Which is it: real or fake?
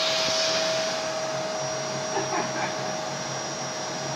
real